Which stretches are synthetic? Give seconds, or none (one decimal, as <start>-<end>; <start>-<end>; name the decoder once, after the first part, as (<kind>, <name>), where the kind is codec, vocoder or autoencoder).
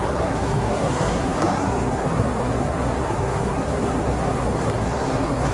0.0-5.5 (codec, SNAC)